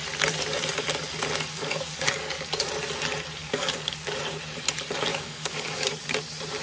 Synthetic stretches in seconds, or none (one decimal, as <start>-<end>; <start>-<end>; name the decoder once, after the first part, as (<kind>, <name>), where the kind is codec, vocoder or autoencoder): 1.5-2.7 (codec, DAC); 3.4-4.2; 5.1-5.8